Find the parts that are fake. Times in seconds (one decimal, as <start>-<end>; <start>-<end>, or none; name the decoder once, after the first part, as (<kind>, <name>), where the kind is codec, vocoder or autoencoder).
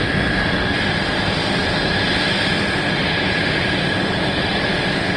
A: none